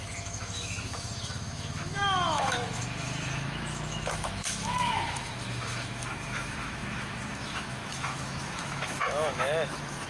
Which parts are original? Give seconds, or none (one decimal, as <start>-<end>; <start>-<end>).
none

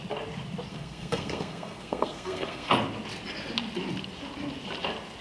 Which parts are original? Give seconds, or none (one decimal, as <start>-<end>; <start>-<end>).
0.0-0.7; 2.7-5.2

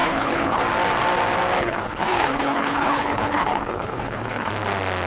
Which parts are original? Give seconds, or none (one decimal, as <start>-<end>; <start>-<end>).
0.6-1.6; 4.5-5.1

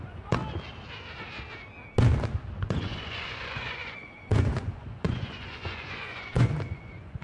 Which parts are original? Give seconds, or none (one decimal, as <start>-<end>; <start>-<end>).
0.4-2.6

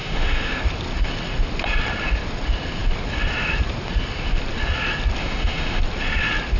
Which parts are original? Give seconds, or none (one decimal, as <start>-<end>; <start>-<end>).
0.6-5.2; 5.8-6.6

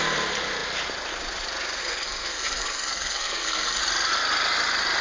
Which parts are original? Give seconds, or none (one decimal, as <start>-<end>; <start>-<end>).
0.0-1.8; 3.8-5.0

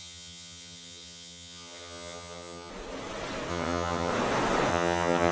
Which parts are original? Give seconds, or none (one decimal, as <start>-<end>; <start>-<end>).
2.7-3.5; 4.1-4.7

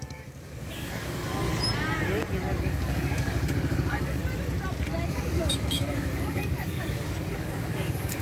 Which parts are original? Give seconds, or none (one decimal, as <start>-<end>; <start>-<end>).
1.5-2.6; 4.2-5.1